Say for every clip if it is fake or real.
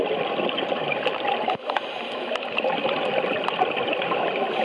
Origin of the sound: real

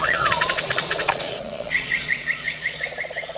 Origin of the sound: fake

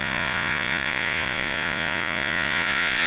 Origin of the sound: fake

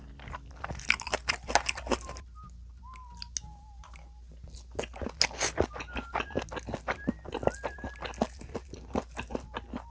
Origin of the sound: real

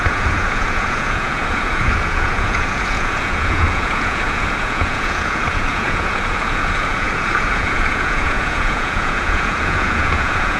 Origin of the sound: fake